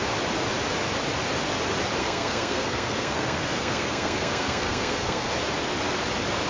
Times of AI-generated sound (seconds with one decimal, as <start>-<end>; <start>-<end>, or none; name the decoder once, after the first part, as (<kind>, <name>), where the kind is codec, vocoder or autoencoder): 2.0-5.3 (codec, SNAC)